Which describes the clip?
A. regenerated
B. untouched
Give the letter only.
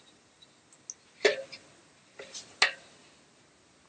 B